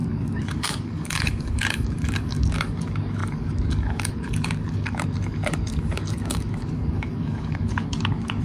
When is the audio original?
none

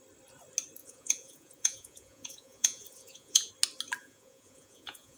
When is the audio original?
0.0-0.8; 3.5-4.0

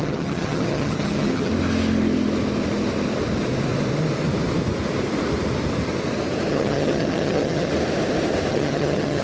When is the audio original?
1.5-6.5; 7.7-8.5

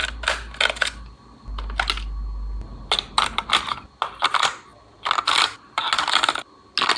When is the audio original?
0.0-7.0

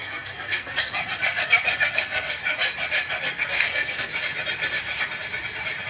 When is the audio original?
2.4-3.3; 4.1-5.9

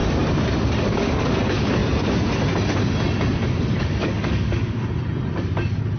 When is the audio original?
0.0-0.8; 1.8-3.8; 4.8-6.0